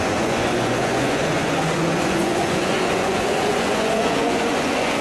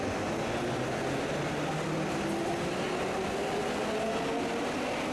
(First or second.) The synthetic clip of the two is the first